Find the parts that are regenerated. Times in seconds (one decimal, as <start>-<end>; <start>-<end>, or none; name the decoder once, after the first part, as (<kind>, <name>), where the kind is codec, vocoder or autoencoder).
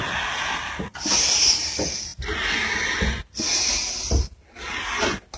none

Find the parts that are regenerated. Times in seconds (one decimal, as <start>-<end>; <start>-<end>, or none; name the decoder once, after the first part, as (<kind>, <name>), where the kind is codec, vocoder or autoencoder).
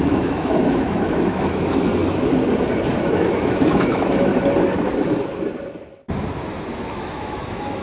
0.0-1.9 (autoencoder, DAC-VAE); 3.0-4.3; 6.9-7.8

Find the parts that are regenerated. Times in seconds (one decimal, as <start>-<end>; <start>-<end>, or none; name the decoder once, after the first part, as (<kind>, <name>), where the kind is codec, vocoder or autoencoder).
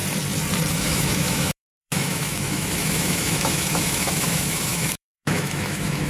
0.7-6.1 (autoencoder, DAC-VAE)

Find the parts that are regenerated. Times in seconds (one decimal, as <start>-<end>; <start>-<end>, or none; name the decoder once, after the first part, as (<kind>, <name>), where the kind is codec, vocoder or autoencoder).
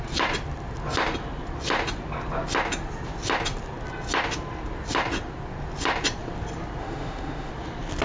6.8-7.5 (autoencoder, DAC-VAE)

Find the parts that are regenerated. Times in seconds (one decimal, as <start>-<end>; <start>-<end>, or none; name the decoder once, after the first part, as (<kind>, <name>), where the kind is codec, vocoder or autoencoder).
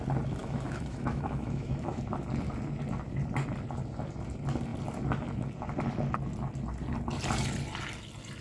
0.4-2.0 (autoencoder, DAC-VAE)